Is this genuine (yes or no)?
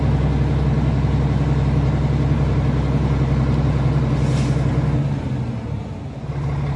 yes